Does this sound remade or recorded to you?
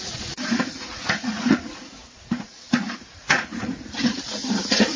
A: remade